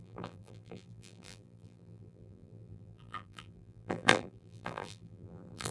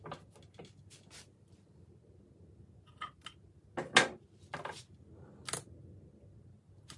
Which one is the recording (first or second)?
second